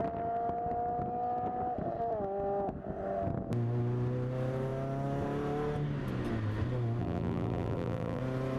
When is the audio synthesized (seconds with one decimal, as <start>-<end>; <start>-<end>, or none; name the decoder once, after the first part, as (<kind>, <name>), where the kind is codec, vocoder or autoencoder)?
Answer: 7.0-8.2 (vocoder, BigVGAN v2)